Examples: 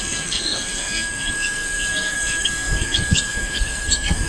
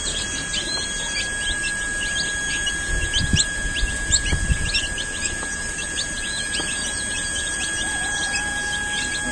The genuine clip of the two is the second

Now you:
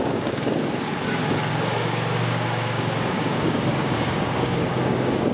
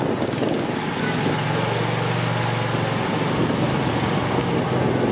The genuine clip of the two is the second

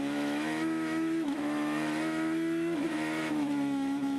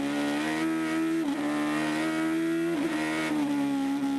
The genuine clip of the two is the second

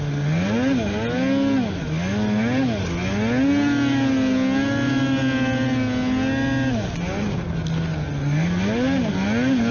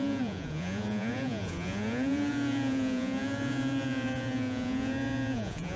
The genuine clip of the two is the first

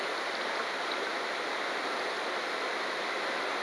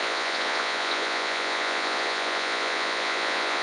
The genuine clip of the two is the first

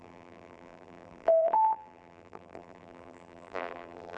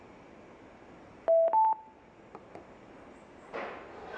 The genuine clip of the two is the second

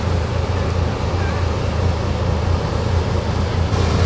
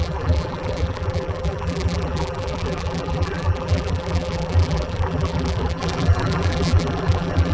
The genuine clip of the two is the first